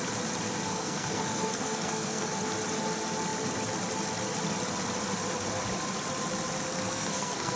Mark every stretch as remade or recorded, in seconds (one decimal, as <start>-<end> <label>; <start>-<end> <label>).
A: 0.0-0.7 recorded; 0.7-2.3 remade; 2.3-6.7 recorded; 6.7-7.6 remade